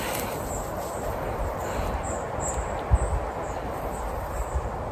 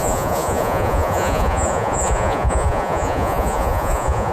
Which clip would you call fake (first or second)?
second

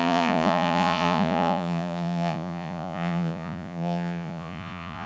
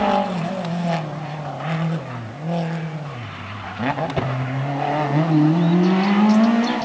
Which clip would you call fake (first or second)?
first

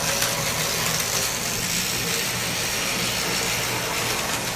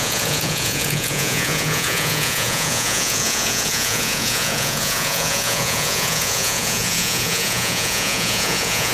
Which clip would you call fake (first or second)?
second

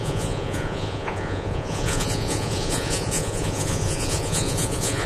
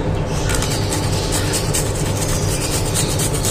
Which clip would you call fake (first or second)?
first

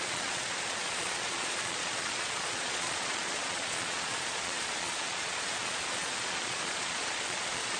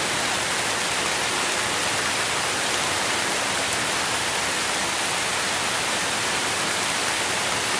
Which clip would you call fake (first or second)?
first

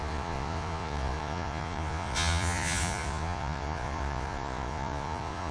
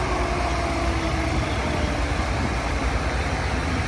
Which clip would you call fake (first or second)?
first